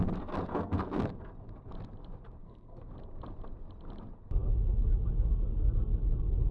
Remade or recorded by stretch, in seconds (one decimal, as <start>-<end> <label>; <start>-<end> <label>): 0.0-0.5 recorded; 0.5-1.1 remade; 1.1-2.4 recorded; 2.4-2.9 remade; 2.9-6.5 recorded